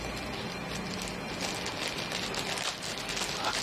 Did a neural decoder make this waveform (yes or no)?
no